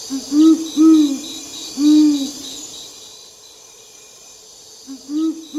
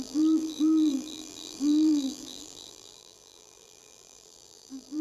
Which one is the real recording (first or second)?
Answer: first